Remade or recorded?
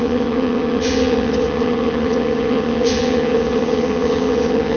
remade